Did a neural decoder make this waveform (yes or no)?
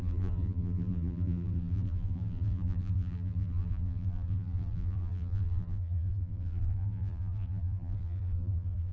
yes